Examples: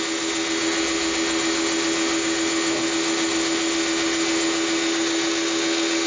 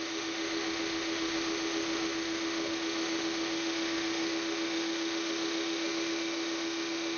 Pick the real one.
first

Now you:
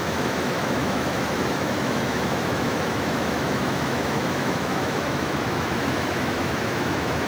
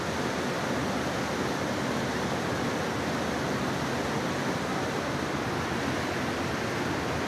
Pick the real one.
second